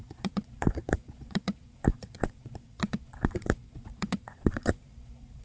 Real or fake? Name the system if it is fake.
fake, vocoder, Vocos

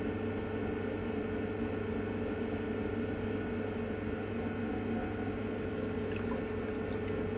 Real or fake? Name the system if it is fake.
real